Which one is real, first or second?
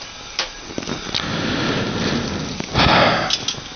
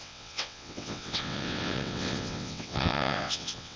first